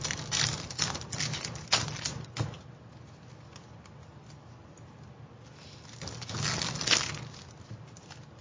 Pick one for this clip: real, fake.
real